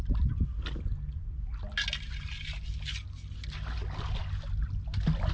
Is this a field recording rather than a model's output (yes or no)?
yes